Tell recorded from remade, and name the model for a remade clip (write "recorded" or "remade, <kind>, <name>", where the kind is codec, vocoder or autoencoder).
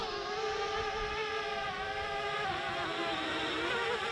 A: recorded